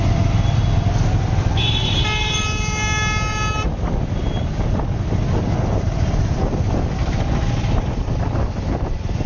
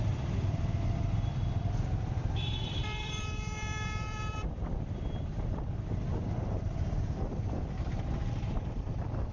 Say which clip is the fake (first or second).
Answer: second